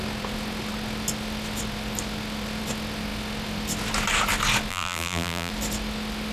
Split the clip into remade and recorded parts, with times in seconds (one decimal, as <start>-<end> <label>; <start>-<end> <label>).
0.0-4.7 recorded; 4.7-5.5 remade; 5.5-6.3 recorded